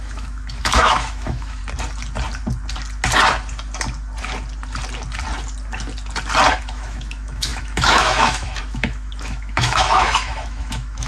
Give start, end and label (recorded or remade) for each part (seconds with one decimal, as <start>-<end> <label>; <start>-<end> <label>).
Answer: 0.0-1.6 remade; 1.6-6.6 recorded; 6.6-11.1 remade